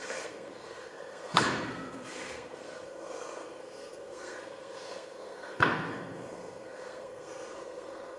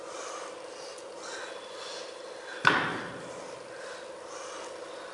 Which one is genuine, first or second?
second